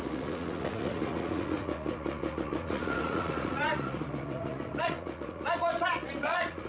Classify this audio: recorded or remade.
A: remade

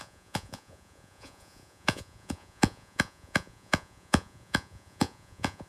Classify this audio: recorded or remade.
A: remade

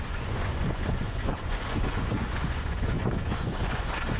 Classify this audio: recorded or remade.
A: remade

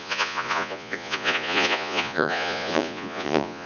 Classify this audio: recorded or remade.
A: remade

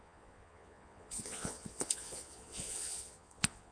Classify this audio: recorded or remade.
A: remade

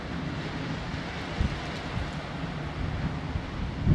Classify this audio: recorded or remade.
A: recorded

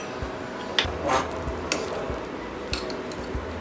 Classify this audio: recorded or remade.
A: recorded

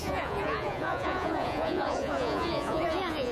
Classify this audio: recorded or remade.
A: remade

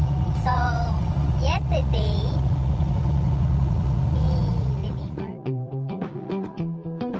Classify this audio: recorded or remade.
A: remade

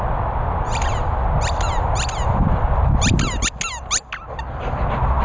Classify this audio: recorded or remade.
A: recorded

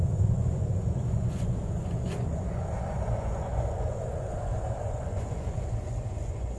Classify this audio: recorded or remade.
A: remade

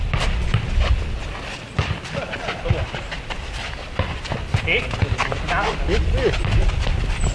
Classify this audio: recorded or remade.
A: recorded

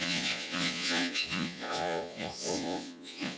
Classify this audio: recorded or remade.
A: remade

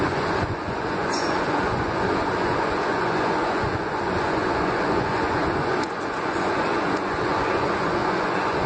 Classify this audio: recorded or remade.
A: remade